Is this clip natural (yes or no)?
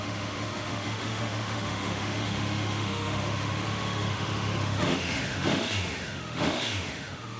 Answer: no